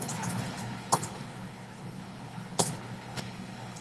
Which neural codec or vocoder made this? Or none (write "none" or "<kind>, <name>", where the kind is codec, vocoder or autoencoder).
codec, HILCodec